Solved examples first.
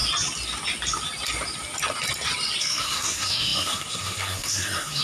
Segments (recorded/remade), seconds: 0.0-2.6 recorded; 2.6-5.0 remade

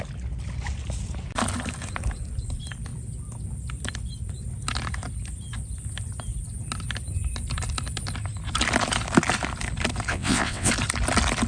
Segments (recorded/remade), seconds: 0.0-10.1 recorded; 10.1-10.7 remade; 10.7-11.5 recorded

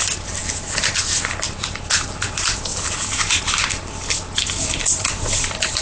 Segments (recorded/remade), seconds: 0.0-2.7 recorded; 2.7-3.4 remade; 3.4-5.8 recorded

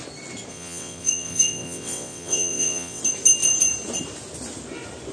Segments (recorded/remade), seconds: 0.0-0.5 recorded; 0.5-3.0 remade; 3.0-5.1 recorded

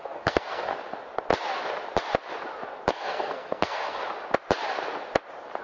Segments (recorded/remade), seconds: 0.0-0.7 remade; 0.7-2.9 recorded; 2.9-4.0 remade; 4.0-5.6 recorded